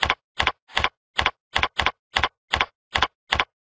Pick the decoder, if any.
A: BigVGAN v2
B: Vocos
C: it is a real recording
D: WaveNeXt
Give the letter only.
C